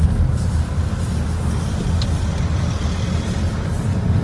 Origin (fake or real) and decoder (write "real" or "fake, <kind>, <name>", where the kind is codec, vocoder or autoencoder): real